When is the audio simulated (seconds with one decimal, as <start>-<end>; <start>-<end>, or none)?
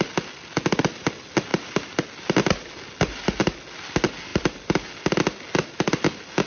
4.3-4.9